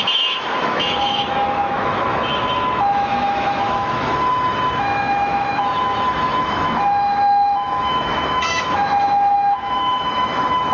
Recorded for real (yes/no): no